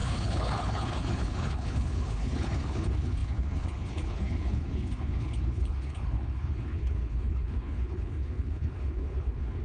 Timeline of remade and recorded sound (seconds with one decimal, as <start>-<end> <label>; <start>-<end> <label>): 0.0-9.6 remade